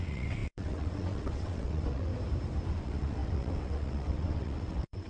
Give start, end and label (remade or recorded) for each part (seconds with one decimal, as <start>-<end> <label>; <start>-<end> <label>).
0.0-2.1 remade; 2.1-2.7 recorded; 2.7-5.1 remade